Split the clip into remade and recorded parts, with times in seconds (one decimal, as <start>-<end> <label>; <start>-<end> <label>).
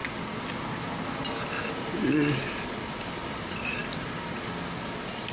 0.0-5.3 recorded